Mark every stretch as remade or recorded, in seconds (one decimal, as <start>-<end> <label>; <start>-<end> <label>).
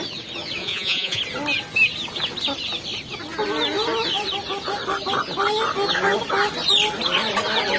0.0-0.6 recorded; 0.6-1.2 remade; 1.2-7.8 recorded